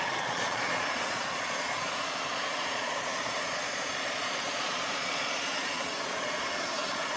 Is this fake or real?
fake